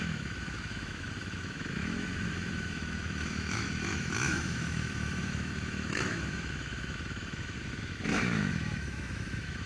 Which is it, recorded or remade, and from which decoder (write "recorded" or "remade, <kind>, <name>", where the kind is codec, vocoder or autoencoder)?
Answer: remade, autoencoder, DAC-VAE